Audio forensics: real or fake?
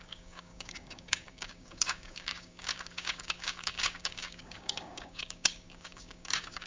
fake